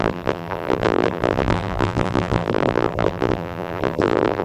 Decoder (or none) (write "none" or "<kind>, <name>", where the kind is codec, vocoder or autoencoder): vocoder, BigVGAN v2